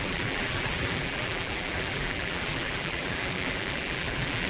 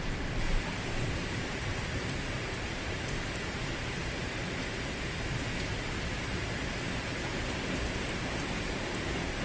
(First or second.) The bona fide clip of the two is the second